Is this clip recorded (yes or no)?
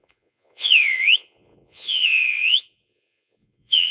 no